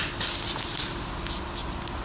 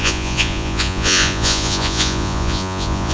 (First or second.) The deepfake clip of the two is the second